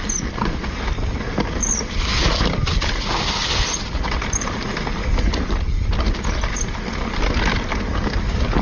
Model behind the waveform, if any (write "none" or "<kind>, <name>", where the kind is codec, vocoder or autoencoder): none